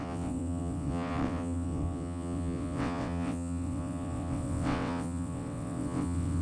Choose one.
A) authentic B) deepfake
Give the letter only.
B